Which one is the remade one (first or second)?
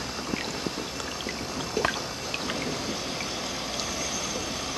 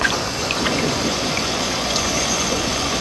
second